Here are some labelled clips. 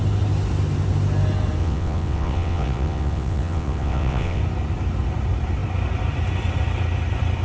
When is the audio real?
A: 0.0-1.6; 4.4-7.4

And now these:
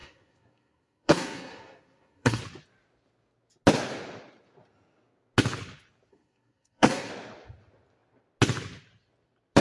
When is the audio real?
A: 2.4-6.1; 7.1-9.6

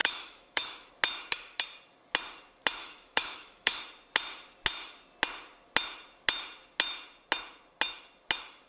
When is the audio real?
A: 0.9-2.8; 3.8-8.7

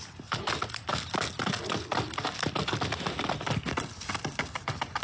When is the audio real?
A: 0.0-5.0

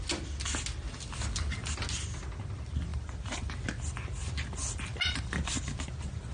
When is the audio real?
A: 0.0-2.9; 3.6-4.9

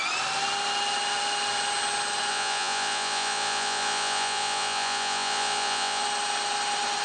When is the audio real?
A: 0.0-2.3; 6.0-7.0